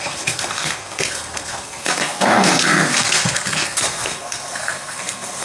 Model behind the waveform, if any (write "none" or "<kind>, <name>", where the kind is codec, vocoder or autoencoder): codec, SNAC